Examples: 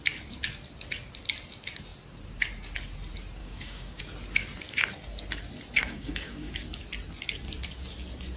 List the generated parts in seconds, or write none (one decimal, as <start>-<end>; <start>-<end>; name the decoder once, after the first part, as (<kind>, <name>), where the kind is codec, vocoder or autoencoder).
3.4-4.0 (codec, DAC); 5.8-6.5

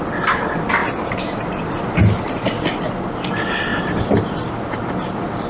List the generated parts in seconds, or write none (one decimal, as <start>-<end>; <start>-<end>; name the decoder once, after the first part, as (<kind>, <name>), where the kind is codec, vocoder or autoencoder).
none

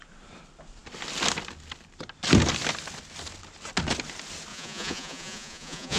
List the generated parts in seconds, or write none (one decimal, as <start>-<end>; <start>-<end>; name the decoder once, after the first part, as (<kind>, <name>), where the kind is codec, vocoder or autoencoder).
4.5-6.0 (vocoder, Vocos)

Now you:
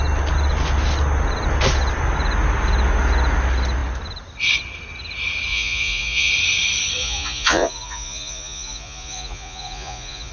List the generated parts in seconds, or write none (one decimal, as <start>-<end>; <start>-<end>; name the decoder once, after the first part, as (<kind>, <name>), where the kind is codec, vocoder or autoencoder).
5.5-6.3 (vocoder, Vocos); 7.0-10.3

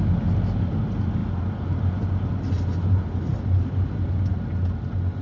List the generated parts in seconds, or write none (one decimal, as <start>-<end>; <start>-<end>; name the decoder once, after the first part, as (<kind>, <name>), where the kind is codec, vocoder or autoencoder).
none

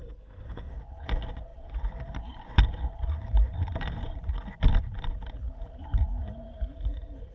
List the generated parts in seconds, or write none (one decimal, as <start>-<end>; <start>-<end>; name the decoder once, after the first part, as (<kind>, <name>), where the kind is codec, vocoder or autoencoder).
0.0-0.7 (codec, SNAC)